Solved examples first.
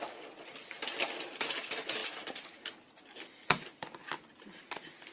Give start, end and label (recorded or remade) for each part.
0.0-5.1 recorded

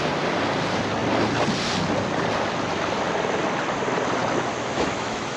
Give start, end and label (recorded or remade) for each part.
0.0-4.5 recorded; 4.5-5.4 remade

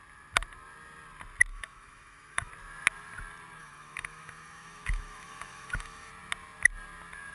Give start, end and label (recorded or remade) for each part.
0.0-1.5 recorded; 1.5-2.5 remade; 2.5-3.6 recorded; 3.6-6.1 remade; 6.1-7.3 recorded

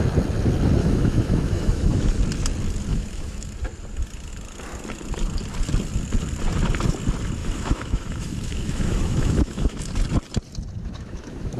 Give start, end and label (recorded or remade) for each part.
0.0-0.8 recorded; 0.8-2.2 remade; 2.2-2.9 recorded; 2.9-3.5 remade; 3.5-7.4 recorded; 7.4-9.8 remade; 9.8-10.8 recorded; 10.8-11.6 remade

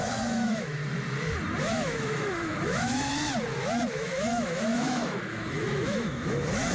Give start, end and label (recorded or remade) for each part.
0.0-0.8 remade; 0.8-1.6 recorded; 1.6-3.1 remade; 3.1-3.9 recorded; 3.9-6.7 remade

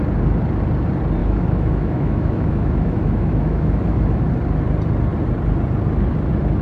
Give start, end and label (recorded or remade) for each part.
0.0-1.2 recorded; 1.2-4.2 remade; 4.2-6.6 recorded